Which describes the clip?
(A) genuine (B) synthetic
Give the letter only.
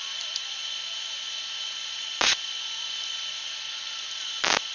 A